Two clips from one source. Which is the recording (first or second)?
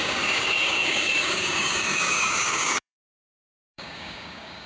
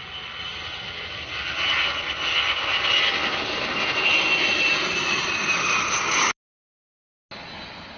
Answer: second